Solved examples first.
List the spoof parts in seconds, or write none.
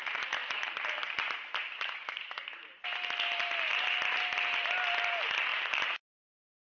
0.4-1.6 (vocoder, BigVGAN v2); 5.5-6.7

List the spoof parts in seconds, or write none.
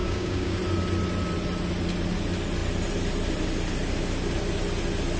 0.0-0.6 (codec, DAC)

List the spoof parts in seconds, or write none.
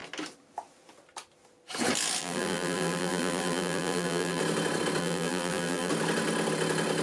2.2-4.4 (vocoder, BigVGAN v2); 5.0-5.9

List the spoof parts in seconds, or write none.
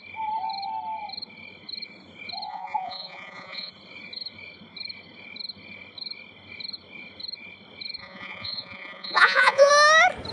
2.5-3.7 (vocoder, Vocos); 8.0-9.7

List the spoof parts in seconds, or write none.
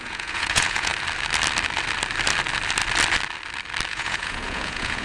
0.0-0.9 (vocoder, Vocos); 3.9-5.0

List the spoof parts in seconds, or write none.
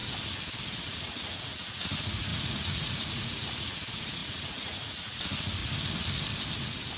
0.8-5.6 (vocoder, Vocos)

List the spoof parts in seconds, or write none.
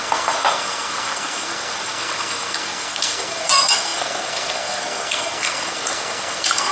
0.0-6.7 (codec, SNAC)